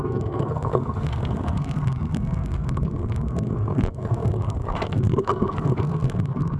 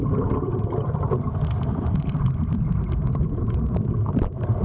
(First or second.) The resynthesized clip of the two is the first